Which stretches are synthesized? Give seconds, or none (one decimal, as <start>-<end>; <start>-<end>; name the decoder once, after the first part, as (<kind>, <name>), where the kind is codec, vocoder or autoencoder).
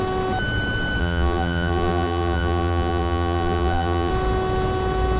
1.0-4.1 (vocoder, BigVGAN v2)